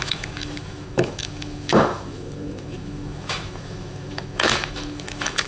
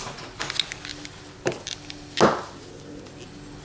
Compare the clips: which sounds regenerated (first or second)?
first